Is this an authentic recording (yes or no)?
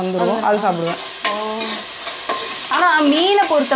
yes